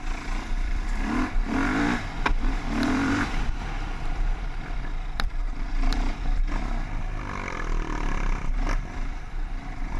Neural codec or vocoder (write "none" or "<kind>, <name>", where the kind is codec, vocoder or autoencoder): vocoder, BigVGAN v2